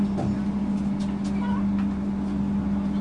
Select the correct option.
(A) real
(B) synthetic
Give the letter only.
A